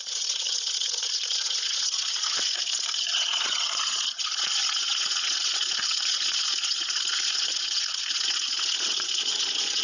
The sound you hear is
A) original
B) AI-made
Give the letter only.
B